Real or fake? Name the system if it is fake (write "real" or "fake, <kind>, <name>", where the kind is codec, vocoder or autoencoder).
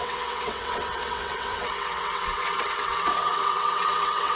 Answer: fake, vocoder, WaveNeXt